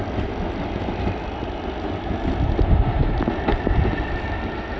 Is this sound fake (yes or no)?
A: no